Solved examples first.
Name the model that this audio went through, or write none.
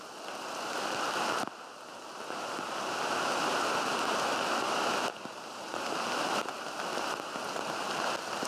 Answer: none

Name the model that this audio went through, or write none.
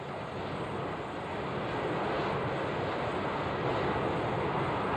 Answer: none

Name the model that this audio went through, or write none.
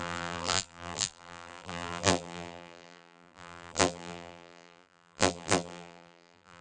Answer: vocoder, BigVGAN v2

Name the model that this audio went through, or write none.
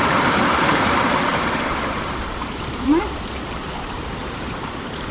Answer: vocoder, BigVGAN v2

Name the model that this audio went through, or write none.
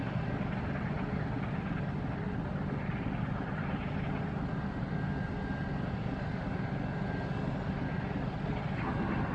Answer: none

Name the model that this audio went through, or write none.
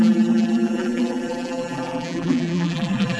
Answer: vocoder, BigVGAN v2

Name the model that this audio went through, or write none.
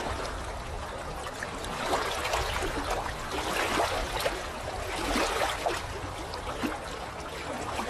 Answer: none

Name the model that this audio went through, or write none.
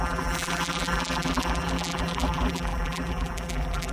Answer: vocoder, BigVGAN v2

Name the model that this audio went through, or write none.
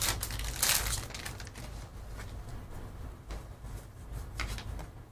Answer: none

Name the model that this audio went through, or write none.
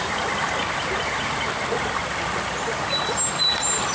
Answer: none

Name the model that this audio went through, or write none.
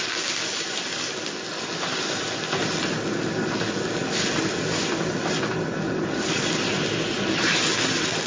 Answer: none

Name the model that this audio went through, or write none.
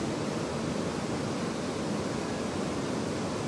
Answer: none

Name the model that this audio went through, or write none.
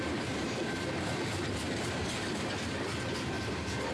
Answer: none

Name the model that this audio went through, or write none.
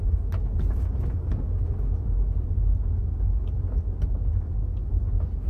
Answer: none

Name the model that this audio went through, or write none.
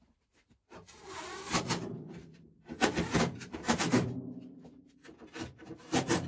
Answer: vocoder, BigVGAN v2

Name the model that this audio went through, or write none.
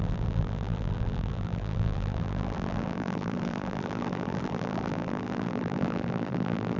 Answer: vocoder, BigVGAN v2